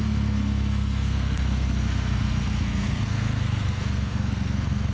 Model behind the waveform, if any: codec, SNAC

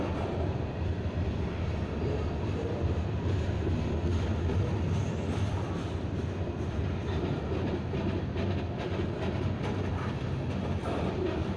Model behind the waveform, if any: none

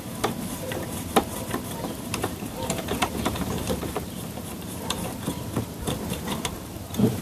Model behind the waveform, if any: vocoder, BigVGAN v2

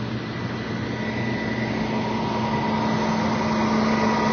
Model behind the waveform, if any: none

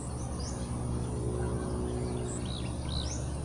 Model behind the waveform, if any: none